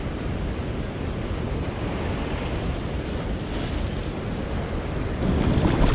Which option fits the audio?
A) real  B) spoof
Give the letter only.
A